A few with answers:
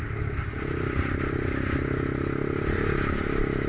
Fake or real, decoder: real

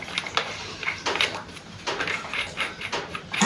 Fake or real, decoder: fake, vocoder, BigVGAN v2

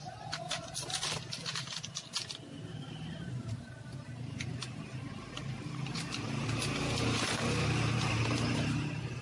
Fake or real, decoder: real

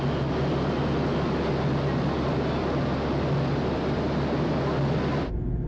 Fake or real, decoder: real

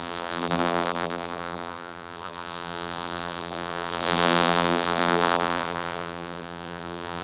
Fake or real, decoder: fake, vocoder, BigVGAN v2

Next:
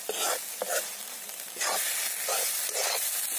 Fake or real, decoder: real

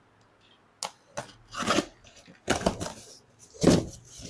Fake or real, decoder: real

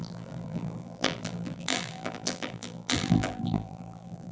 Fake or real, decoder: fake, vocoder, BigVGAN v2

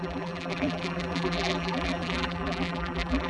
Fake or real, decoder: fake, vocoder, BigVGAN v2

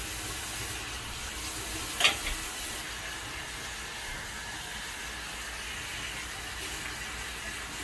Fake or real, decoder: real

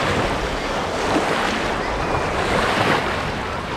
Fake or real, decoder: real